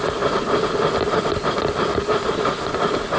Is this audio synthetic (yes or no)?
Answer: no